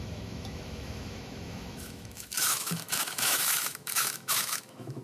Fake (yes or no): yes